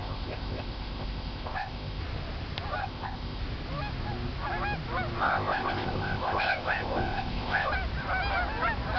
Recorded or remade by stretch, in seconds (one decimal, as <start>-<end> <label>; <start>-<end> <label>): 0.0-2.0 remade; 2.0-2.8 recorded; 2.8-3.4 remade; 3.4-5.2 recorded; 5.2-7.7 remade; 7.7-9.0 recorded